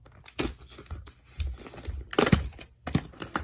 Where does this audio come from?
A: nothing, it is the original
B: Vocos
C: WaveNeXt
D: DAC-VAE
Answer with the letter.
A